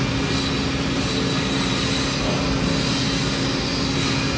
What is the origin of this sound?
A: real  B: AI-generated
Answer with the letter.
A